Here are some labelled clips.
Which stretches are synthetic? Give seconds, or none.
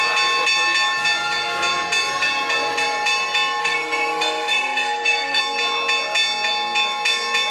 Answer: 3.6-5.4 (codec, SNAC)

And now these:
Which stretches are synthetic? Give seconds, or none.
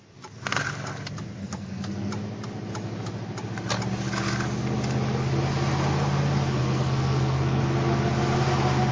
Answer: 1.4-2.1 (codec, SNAC); 6.6-7.6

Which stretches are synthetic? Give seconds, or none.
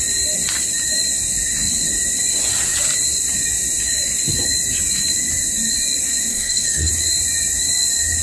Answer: 6.3-6.9 (codec, SNAC)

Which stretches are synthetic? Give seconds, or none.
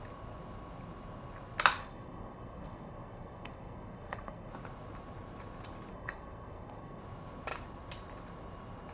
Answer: 1.8-4.5 (codec, SNAC); 5.9-7.0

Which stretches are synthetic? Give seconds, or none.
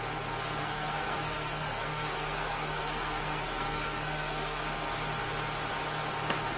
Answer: 0.6-4.6 (codec, SNAC)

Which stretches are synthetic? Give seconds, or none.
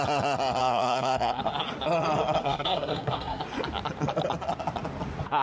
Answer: 0.6-1.4 (codec, SNAC); 2.4-3.4